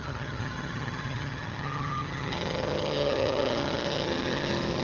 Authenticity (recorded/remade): remade